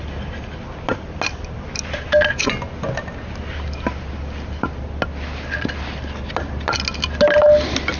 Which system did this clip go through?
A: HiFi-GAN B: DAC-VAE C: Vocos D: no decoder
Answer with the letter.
D